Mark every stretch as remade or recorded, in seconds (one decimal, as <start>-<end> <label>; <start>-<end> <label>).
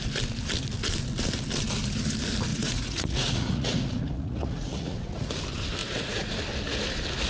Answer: 0.0-2.5 recorded; 2.5-5.3 remade; 5.3-5.8 recorded; 5.8-6.4 remade; 6.4-7.3 recorded